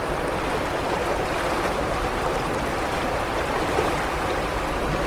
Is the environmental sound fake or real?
real